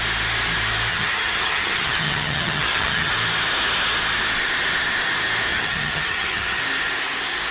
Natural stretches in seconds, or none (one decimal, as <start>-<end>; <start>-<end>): 0.0-0.9; 3.1-5.5; 6.6-7.5

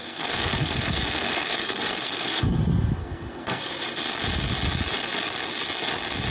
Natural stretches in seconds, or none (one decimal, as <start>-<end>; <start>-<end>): 2.6-3.0; 3.6-6.3